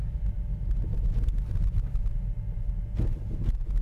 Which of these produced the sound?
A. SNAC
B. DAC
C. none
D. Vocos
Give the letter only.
C